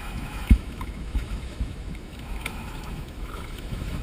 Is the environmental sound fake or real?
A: fake